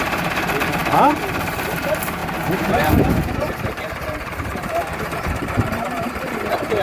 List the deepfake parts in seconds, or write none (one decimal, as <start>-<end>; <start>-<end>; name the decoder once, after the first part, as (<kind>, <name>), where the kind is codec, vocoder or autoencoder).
0.0-6.8 (vocoder, BigVGAN v2)